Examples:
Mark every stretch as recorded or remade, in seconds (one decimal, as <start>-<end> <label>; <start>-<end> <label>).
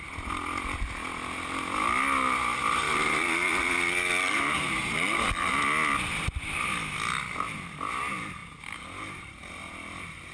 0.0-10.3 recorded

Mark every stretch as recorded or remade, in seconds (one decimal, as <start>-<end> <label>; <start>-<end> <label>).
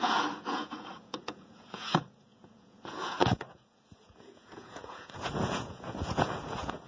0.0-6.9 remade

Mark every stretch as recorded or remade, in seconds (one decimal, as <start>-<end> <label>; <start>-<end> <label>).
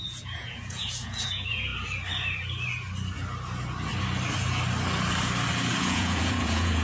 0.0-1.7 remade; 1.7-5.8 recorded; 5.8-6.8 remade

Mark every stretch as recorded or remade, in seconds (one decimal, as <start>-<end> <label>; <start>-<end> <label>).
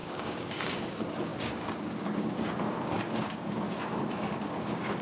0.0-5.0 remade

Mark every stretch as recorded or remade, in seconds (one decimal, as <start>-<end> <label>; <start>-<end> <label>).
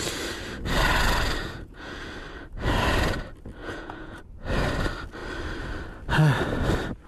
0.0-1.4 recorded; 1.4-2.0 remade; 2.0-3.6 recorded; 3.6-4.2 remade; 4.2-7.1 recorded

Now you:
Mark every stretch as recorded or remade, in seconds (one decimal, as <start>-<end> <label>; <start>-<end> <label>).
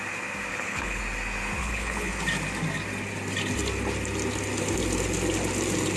0.0-0.5 recorded; 0.5-1.0 remade; 1.0-1.6 recorded; 1.6-2.1 remade; 2.1-6.0 recorded